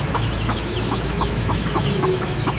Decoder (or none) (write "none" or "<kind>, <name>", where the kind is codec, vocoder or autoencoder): autoencoder, DAC-VAE